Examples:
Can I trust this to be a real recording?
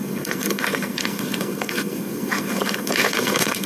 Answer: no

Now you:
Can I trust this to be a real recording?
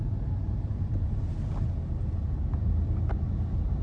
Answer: yes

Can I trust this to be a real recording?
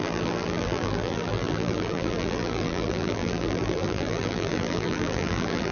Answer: no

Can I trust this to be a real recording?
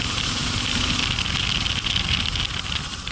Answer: yes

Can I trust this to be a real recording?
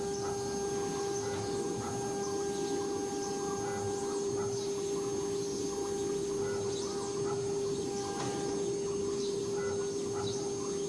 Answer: yes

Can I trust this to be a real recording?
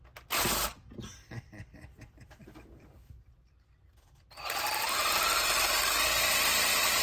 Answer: yes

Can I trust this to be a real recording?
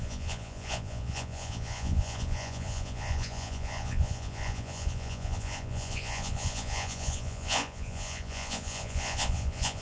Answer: no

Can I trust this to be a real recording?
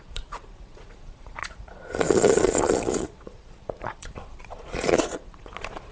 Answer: no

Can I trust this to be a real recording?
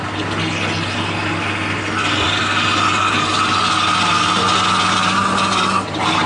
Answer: yes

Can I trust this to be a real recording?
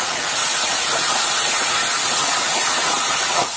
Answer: no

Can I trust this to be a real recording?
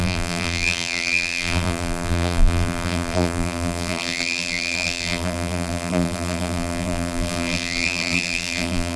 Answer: no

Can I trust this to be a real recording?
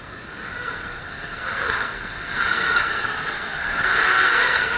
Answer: no